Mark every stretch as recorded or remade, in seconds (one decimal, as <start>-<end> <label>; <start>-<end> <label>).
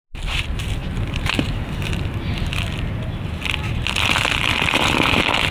0.0-5.5 recorded